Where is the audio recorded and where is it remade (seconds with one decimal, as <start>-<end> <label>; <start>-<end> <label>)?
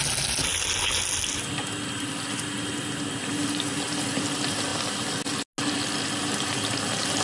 0.0-7.2 recorded